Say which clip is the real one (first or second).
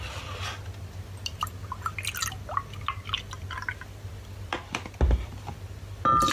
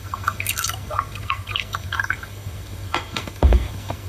first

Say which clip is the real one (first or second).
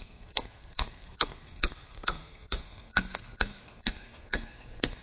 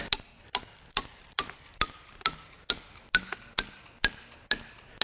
second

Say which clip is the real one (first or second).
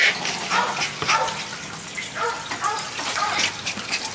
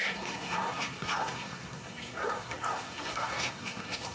first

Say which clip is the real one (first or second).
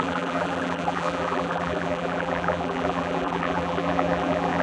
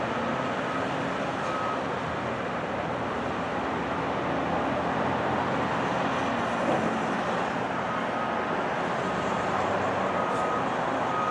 second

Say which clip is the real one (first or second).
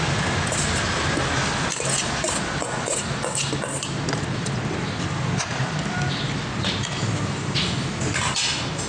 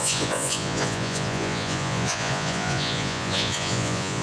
first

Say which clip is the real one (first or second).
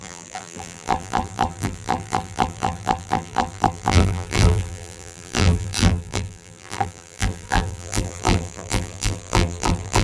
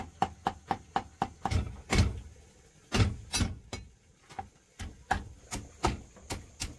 second